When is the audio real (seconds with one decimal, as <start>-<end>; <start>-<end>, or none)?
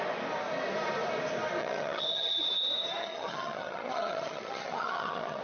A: 0.0-1.6; 2.5-3.0